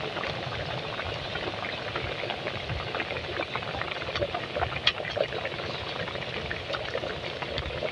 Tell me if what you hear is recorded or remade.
recorded